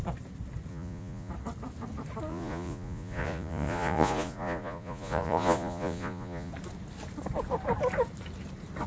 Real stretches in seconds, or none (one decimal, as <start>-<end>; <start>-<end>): 0.0-0.7; 1.3-2.3; 6.5-8.9